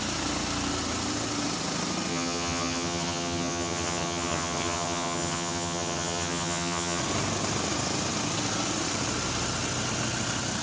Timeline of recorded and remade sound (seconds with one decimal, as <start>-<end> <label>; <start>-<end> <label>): 0.0-2.1 recorded; 2.1-7.0 remade; 7.0-10.6 recorded

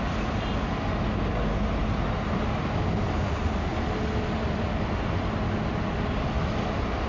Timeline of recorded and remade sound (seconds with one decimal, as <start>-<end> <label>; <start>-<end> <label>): 0.0-7.1 recorded

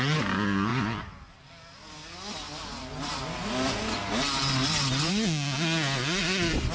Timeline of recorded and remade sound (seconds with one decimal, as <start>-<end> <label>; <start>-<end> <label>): 0.0-6.7 recorded

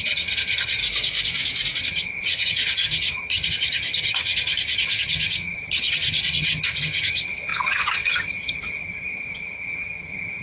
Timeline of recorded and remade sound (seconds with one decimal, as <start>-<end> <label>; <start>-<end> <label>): 0.0-0.8 remade; 0.8-1.8 recorded; 1.8-10.4 remade

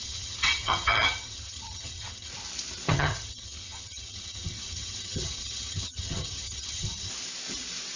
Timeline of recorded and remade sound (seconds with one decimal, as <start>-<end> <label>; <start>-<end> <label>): 0.0-2.3 remade; 2.3-2.9 recorded; 2.9-7.1 remade; 7.1-8.0 recorded

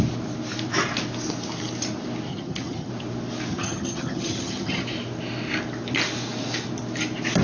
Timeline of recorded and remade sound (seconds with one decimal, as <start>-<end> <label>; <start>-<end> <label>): 0.0-2.3 recorded; 2.3-2.9 remade; 2.9-3.5 recorded; 3.5-4.8 remade; 4.8-7.4 recorded

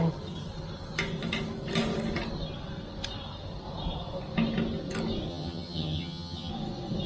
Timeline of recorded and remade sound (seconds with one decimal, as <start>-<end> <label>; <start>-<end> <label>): 0.0-5.3 recorded; 5.3-6.5 remade; 6.5-7.1 recorded

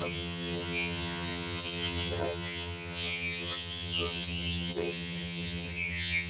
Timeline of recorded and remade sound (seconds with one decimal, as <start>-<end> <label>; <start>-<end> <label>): 0.0-6.3 remade